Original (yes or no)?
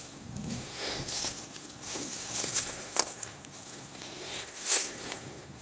no